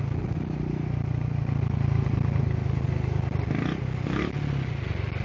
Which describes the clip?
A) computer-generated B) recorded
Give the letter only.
B